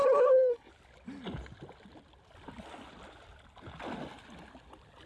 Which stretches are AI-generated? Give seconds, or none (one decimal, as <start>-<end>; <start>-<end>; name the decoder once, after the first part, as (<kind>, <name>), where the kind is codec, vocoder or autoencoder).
0.0-0.7 (codec, HILCodec)